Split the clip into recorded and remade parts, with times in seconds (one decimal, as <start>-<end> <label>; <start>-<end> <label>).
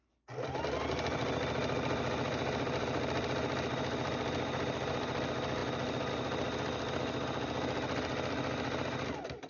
0.0-9.5 recorded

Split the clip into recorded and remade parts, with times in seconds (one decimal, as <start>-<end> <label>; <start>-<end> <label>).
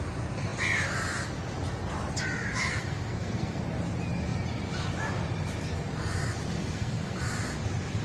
0.0-2.6 recorded; 2.6-3.6 remade; 3.6-6.6 recorded; 6.6-7.2 remade; 7.2-8.0 recorded